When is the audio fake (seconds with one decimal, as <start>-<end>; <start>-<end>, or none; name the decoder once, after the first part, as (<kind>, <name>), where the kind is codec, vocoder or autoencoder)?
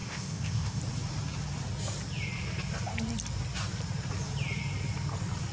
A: 0.0-0.8 (codec, ZipCodec)